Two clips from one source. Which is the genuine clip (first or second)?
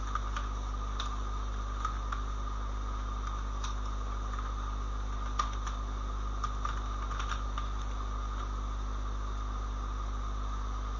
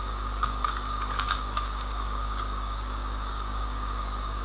first